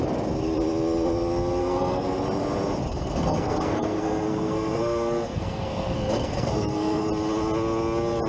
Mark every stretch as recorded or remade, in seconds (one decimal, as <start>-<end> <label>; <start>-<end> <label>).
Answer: 0.0-1.6 recorded; 1.6-2.2 remade; 2.2-2.9 recorded; 2.9-7.1 remade; 7.1-8.3 recorded